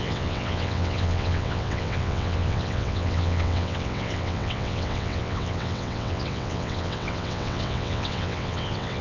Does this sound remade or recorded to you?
remade